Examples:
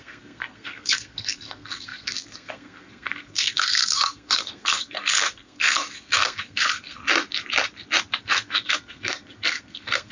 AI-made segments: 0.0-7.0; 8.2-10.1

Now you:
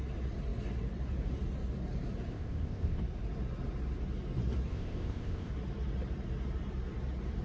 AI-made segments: 2.3-3.0; 4.7-5.5